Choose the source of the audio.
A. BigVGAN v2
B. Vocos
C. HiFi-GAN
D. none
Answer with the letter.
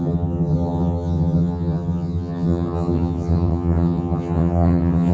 C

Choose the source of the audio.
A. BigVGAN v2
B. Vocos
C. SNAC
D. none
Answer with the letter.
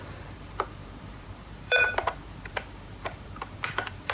A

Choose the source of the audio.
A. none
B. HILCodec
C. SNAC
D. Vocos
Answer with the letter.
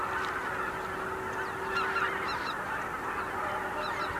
A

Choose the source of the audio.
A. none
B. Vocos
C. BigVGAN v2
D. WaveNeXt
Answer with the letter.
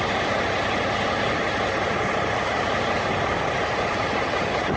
A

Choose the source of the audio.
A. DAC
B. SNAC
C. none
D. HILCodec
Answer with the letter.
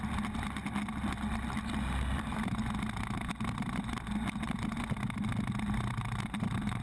C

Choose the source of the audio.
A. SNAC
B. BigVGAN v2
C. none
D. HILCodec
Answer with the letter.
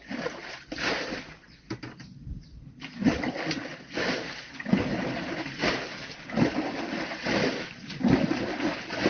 C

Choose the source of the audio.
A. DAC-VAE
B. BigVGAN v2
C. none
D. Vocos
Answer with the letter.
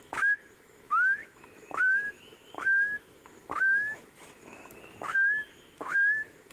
A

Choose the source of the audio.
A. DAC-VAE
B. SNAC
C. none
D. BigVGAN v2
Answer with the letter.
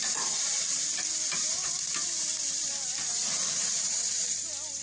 D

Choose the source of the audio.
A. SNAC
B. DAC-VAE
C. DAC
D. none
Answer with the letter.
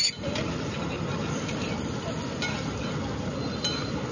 D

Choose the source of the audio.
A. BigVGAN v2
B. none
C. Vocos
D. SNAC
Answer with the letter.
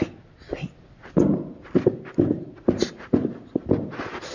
B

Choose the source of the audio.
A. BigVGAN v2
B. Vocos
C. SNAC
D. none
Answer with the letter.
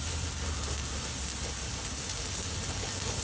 D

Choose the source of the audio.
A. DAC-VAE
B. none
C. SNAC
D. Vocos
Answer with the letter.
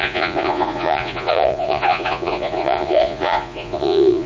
D